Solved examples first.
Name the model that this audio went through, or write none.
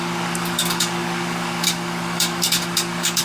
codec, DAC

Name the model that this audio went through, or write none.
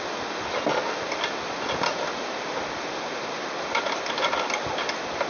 none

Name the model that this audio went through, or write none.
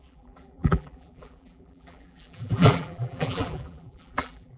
vocoder, BigVGAN v2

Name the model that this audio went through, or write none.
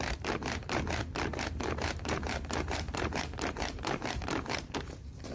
vocoder, BigVGAN v2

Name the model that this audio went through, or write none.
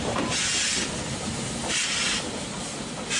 none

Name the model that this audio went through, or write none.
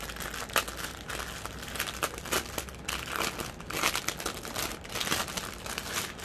none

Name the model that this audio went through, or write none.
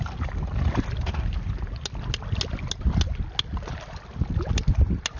none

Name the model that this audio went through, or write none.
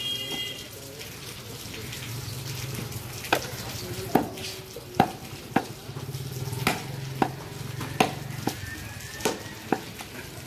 none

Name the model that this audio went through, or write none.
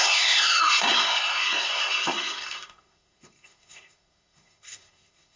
codec, SNAC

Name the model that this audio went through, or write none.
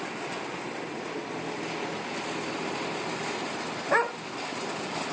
none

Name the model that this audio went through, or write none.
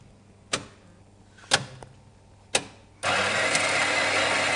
none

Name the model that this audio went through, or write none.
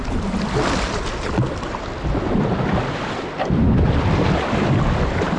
none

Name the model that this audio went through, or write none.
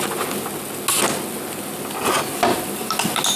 none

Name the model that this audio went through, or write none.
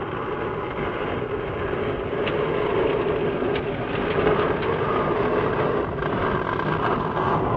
none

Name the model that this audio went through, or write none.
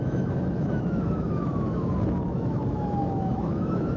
autoencoder, DAC-VAE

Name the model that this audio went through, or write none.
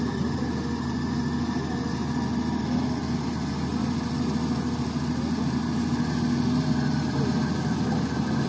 none